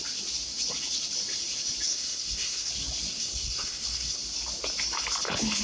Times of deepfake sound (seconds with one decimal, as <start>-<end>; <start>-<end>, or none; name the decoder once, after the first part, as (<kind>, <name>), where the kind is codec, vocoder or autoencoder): 1.9-2.7 (codec, SNAC); 3.1-4.2